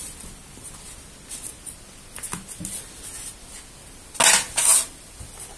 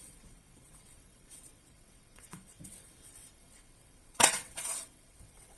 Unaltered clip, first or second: first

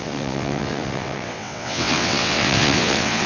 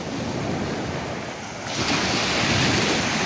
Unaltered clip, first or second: second